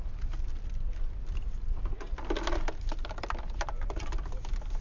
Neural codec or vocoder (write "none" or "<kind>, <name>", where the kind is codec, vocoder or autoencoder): none